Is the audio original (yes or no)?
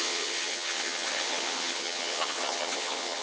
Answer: no